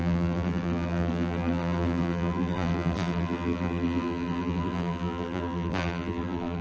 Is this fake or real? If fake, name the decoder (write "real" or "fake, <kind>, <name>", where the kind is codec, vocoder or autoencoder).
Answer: fake, vocoder, BigVGAN v2